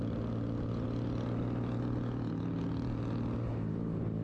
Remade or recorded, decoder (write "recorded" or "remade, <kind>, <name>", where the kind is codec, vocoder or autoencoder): recorded